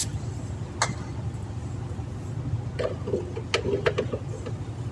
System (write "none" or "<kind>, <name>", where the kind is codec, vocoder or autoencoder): none